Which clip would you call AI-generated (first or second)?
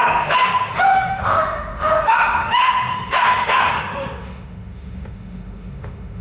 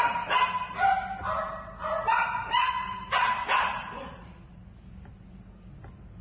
first